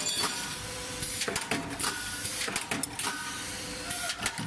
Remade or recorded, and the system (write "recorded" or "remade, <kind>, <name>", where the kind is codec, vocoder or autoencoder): remade, vocoder, BigVGAN v2